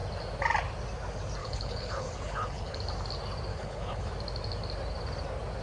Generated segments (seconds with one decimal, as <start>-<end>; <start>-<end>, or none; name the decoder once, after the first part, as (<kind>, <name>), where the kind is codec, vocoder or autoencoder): 1.4-2.8 (codec, HILCodec); 3.5-4.1